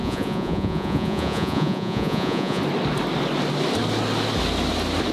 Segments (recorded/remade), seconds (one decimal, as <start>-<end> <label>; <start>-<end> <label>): 0.0-2.6 remade; 2.6-5.1 recorded